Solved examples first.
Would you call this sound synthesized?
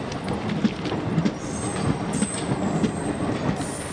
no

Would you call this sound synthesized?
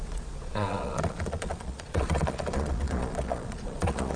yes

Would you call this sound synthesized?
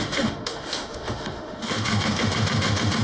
yes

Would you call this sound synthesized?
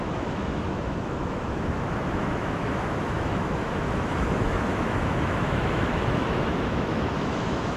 yes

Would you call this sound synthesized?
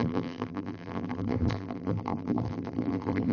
yes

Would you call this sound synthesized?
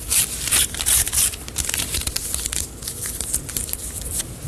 yes